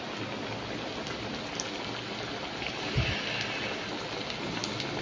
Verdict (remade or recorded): recorded